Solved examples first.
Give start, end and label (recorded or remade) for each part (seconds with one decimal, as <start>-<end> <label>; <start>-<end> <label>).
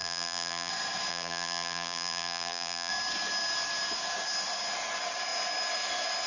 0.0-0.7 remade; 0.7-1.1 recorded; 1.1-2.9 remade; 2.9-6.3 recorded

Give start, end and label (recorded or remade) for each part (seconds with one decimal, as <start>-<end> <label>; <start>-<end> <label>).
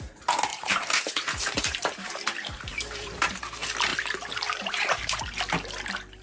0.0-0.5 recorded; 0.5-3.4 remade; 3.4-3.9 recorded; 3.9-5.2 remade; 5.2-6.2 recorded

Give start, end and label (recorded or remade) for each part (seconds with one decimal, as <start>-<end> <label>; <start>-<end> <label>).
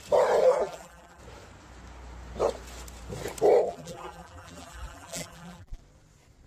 0.0-0.4 recorded; 0.4-1.2 remade; 1.2-3.7 recorded; 3.7-5.8 remade; 5.8-6.5 recorded